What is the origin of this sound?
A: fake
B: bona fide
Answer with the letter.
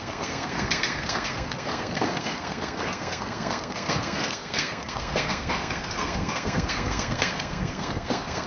A